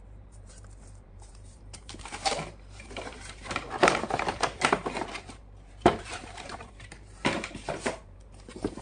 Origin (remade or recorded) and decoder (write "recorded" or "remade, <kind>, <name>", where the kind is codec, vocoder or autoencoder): remade, vocoder, BigVGAN v2